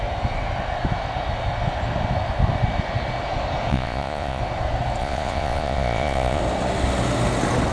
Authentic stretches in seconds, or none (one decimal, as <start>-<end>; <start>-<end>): 0.0-3.7; 4.4-5.0; 6.4-7.7